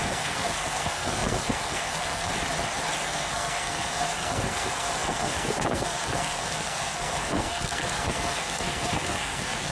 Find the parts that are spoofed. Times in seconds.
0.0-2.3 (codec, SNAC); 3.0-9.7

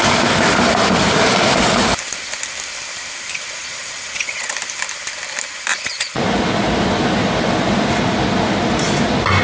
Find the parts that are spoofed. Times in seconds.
3.6-4.5 (vocoder, Vocos); 5.7-6.2

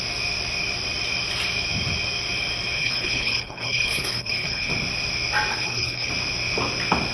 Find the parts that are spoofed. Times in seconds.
2.8-4.7 (codec, HILCodec); 5.5-6.1